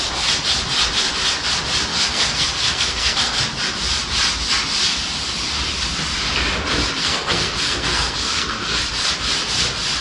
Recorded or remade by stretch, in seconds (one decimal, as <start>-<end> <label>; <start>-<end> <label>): 0.0-1.9 recorded; 1.9-3.4 remade; 3.4-7.0 recorded; 7.0-8.8 remade; 8.8-10.0 recorded